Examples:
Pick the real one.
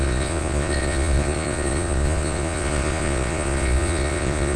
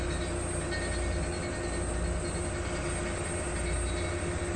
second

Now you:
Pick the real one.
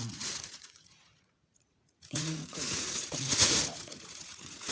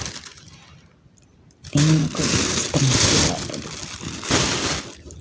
second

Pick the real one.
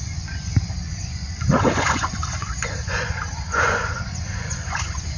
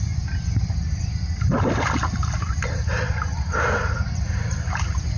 second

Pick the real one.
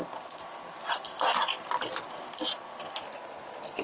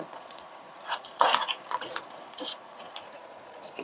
first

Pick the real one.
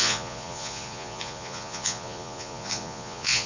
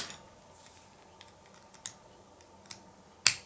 second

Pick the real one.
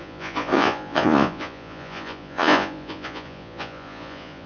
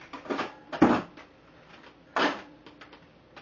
second